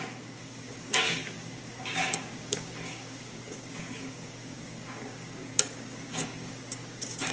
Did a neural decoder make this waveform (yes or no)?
yes